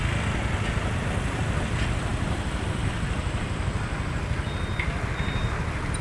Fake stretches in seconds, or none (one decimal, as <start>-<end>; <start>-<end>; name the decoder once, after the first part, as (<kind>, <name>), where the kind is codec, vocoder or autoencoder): none